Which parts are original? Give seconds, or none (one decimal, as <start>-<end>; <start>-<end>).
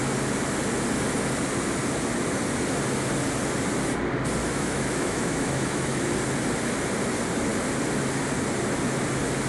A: 0.0-4.4; 6.1-9.5